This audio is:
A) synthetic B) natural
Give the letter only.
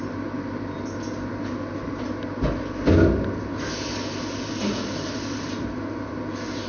B